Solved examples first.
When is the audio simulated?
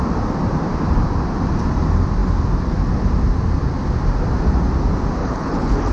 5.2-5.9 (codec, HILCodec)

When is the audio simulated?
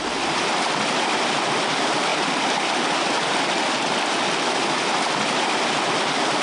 none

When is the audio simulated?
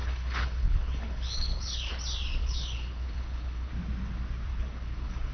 0.0-1.9 (codec, HILCodec); 2.4-3.7; 4.5-5.3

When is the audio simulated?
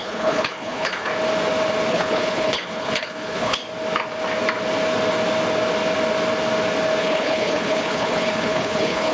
0.0-1.1 (codec, HILCodec); 1.9-3.6; 7.0-9.1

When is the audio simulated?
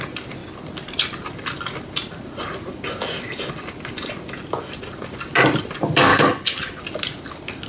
6.1-6.8 (codec, HILCodec)